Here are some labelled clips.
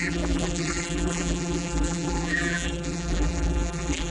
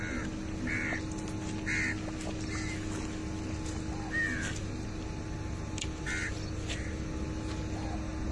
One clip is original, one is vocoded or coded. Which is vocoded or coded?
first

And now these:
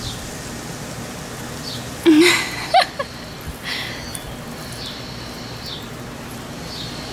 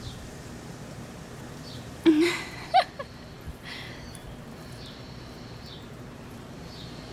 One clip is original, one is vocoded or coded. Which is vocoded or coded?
second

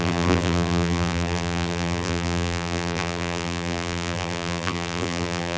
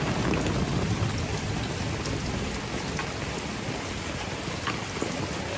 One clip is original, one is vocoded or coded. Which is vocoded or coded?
first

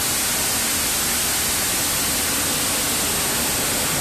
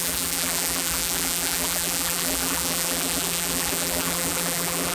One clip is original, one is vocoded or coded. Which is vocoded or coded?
second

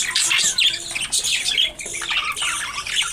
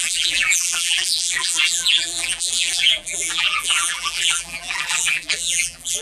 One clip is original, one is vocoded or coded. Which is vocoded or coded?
second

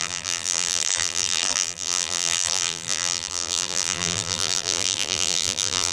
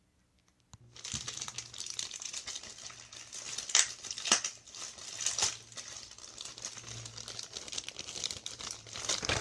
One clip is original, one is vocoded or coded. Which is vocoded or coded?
first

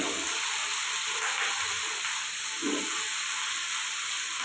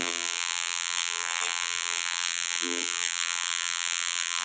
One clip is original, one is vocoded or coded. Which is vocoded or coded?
second